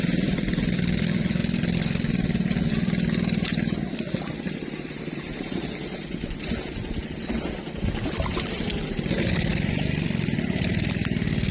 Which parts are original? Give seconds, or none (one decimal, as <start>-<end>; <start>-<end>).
0.0-11.5